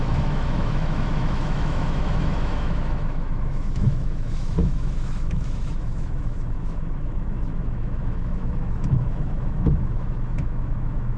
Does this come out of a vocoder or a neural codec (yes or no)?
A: yes